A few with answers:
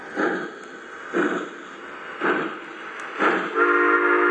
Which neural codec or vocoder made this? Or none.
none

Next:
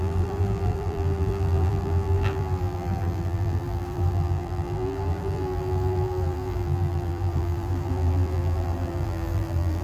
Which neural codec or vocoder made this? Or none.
vocoder, BigVGAN v2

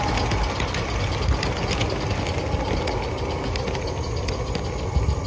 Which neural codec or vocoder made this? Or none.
none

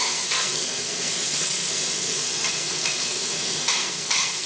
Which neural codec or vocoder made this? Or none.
codec, SNAC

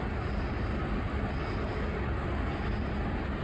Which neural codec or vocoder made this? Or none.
none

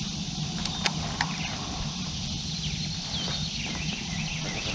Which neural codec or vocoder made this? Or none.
none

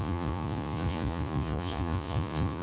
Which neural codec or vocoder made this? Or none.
vocoder, Vocos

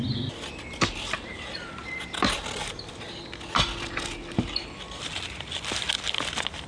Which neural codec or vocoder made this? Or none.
none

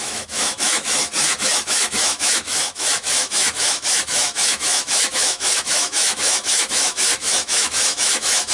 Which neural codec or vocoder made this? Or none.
autoencoder, DAC-VAE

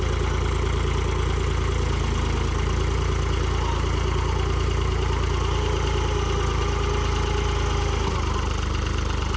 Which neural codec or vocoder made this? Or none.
none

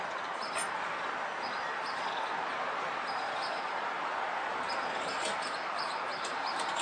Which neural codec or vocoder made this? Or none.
none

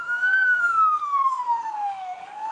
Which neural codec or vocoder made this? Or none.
autoencoder, DAC-VAE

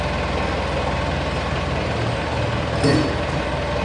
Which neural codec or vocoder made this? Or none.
none